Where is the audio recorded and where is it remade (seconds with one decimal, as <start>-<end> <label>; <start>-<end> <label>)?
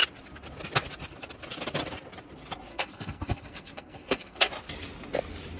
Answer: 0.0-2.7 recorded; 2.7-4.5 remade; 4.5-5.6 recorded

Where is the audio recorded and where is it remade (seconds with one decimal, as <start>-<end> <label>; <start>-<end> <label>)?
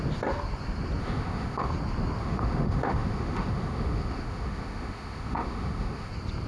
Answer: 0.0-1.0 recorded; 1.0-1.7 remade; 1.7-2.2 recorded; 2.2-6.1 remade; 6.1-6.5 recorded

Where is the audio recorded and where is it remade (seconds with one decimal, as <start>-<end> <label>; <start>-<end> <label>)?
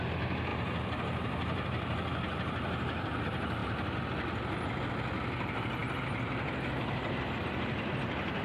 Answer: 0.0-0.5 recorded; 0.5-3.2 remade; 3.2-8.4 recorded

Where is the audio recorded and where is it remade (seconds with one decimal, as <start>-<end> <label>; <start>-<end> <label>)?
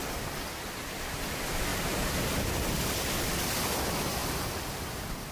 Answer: 0.0-5.3 recorded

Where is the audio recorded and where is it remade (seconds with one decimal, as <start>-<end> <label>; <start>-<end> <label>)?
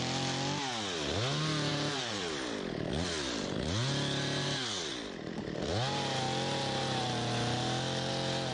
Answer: 0.0-1.7 recorded; 1.7-2.2 remade; 2.2-8.5 recorded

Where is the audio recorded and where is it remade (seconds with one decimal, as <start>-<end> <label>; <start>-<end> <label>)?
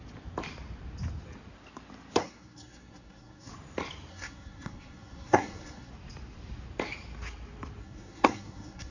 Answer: 0.0-2.2 recorded; 2.2-3.5 remade; 3.5-4.1 recorded; 4.1-5.9 remade; 5.9-7.8 recorded; 7.8-8.9 remade